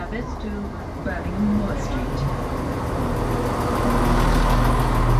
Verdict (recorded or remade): recorded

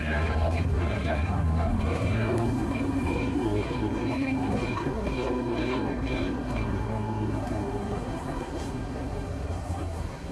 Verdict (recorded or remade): remade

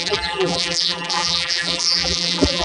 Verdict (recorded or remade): remade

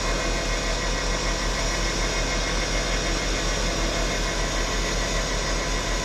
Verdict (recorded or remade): recorded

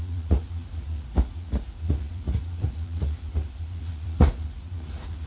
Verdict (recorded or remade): remade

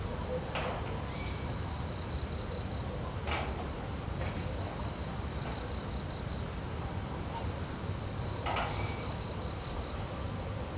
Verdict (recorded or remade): recorded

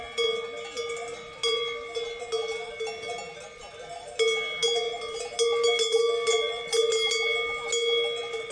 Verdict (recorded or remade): recorded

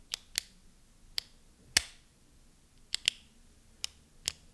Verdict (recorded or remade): recorded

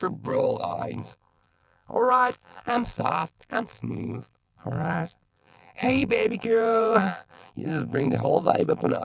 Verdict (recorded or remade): remade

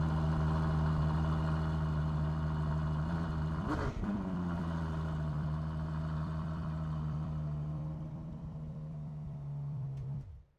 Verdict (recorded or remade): remade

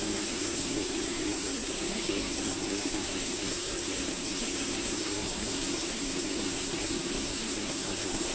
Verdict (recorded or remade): remade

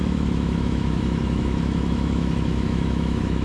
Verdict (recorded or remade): remade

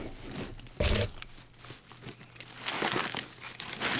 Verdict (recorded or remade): recorded